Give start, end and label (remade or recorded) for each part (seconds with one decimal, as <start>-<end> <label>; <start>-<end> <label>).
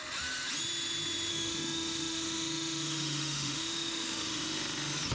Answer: 0.0-1.3 recorded; 1.3-4.4 remade; 4.4-5.1 recorded